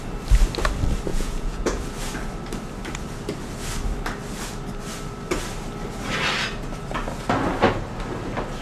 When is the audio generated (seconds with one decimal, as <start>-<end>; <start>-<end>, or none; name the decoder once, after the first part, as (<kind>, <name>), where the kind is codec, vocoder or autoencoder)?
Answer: 1.1-1.8 (vocoder, Vocos)